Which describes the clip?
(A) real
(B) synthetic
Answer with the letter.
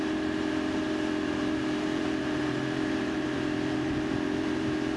B